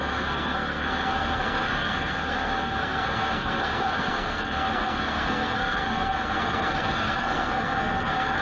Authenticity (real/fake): fake